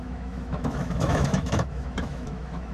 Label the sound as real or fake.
fake